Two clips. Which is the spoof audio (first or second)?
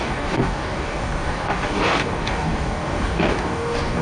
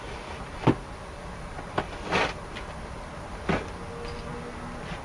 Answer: first